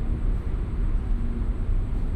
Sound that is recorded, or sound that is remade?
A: recorded